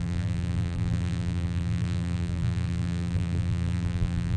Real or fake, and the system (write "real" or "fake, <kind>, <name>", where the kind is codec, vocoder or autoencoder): fake, vocoder, BigVGAN v2